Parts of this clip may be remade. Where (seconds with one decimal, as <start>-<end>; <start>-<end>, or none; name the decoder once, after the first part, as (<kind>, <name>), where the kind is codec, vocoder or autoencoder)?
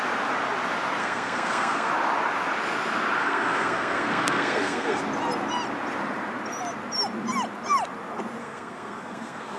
1.0-1.9 (codec, SNAC); 3.2-5.0; 8.4-9.6